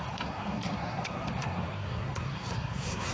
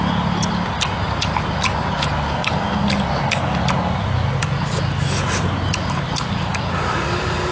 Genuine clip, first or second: second